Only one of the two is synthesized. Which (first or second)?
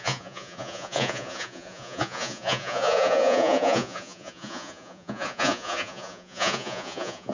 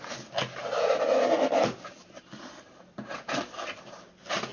first